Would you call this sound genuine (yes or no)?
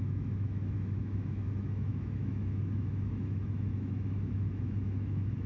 no